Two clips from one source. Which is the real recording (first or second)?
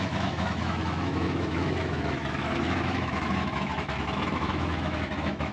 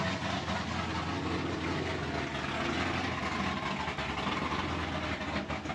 second